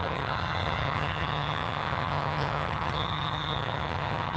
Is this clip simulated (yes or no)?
yes